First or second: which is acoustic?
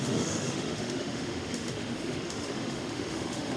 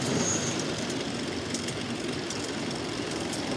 second